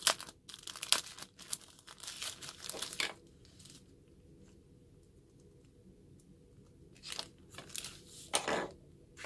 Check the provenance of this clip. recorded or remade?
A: recorded